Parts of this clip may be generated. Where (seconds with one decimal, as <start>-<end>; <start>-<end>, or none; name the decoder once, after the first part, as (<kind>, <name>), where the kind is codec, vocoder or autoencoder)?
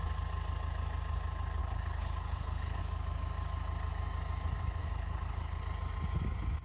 1.6-2.8 (codec, HILCodec); 4.8-5.6